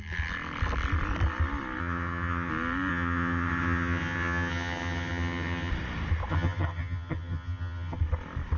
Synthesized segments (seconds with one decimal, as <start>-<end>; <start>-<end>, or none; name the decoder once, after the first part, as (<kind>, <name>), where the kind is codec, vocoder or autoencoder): 1.8-2.5 (vocoder, HiFi-GAN); 2.9-5.7; 6.3-8.0